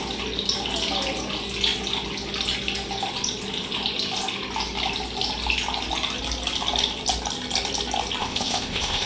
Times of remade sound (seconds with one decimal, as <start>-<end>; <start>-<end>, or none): 8.2-9.1